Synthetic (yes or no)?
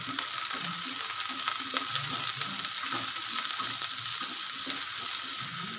no